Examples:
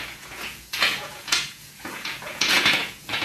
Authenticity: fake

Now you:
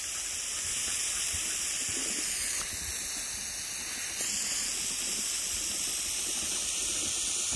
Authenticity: real